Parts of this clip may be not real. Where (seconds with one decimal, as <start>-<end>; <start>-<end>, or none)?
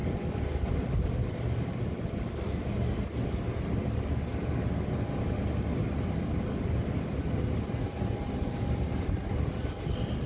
none